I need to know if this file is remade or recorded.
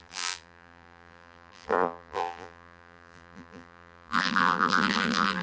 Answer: remade